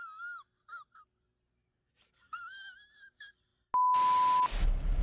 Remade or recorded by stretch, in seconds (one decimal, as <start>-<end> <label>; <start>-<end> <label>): 0.0-1.5 recorded; 1.5-3.5 remade; 3.5-5.0 recorded